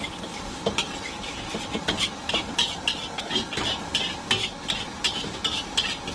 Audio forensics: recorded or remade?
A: recorded